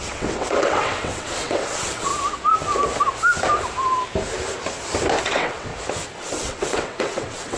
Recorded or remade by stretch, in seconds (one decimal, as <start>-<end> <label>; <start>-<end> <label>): 0.0-2.1 remade; 2.1-5.2 recorded; 5.2-5.7 remade; 5.7-6.2 recorded; 6.2-7.6 remade